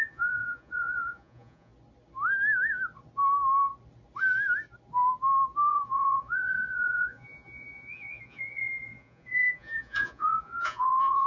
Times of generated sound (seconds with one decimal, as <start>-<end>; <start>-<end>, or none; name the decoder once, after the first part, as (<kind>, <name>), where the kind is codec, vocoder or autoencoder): 0.0-1.7 (vocoder, Vocos); 5.7-11.3